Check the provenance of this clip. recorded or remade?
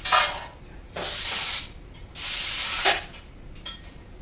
recorded